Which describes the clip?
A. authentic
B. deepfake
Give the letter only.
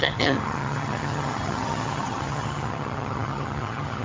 B